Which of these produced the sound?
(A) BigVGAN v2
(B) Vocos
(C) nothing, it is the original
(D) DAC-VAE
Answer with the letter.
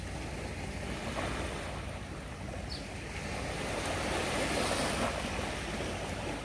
C